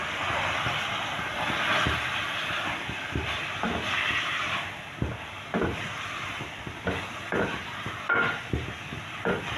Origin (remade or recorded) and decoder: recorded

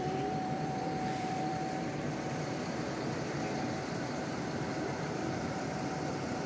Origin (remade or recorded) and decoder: remade, vocoder, BigVGAN v2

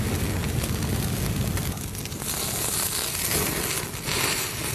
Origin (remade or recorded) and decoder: recorded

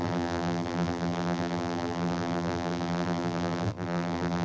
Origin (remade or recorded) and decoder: remade, vocoder, BigVGAN v2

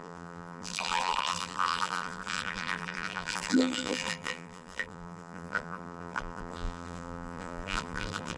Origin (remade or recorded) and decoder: remade, vocoder, BigVGAN v2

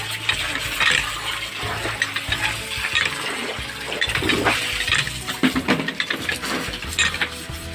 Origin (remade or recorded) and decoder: recorded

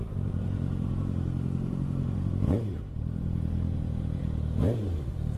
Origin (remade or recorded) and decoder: remade, vocoder, BigVGAN v2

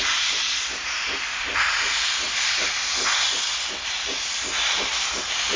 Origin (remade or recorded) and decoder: recorded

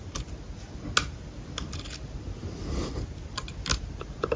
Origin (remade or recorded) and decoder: recorded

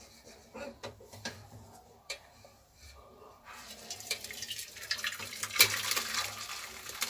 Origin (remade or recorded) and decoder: remade, vocoder, BigVGAN v2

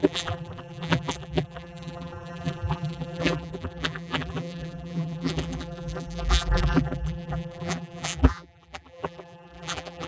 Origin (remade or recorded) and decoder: remade, vocoder, BigVGAN v2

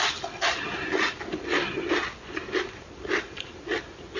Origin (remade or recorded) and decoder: recorded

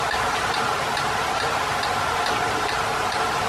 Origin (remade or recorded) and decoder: remade, vocoder, BigVGAN v2